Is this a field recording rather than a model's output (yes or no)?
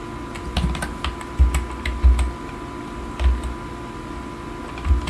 yes